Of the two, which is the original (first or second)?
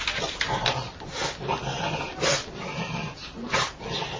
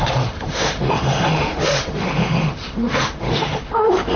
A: first